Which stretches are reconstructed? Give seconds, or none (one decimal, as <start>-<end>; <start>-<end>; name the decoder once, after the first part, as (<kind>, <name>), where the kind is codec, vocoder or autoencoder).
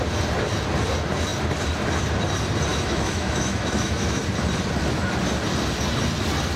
2.7-4.2 (autoencoder, DAC-VAE)